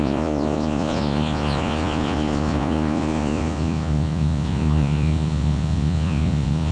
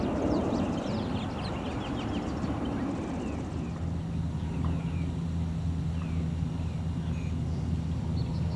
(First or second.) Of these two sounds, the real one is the second